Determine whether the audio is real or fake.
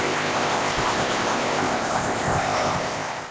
fake